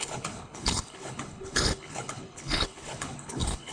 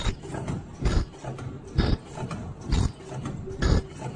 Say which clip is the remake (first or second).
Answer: first